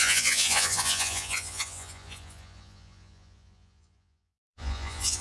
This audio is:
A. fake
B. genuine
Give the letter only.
A